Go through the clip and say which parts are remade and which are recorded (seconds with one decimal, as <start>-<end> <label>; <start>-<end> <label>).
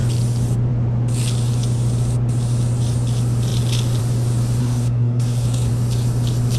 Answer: 0.0-4.6 recorded; 4.6-5.7 remade; 5.7-6.6 recorded